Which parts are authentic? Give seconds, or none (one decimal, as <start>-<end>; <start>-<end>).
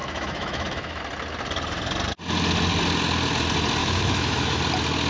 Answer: 1.0-3.8; 4.6-5.1